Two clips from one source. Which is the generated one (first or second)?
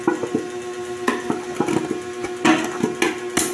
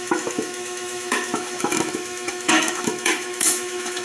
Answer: second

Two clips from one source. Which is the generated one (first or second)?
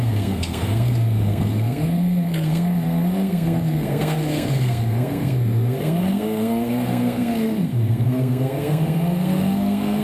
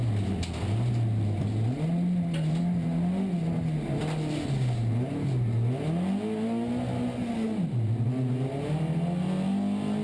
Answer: first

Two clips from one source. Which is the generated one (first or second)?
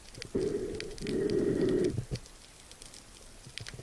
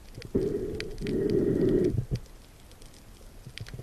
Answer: first